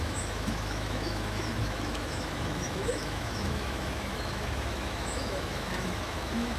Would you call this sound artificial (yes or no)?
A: yes